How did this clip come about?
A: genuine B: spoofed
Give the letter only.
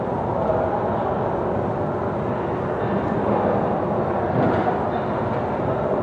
A